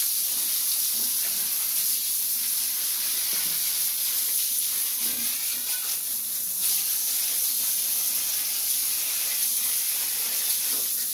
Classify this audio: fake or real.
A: real